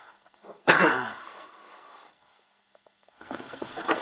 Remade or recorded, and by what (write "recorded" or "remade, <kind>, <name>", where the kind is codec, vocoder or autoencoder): remade, codec, SNAC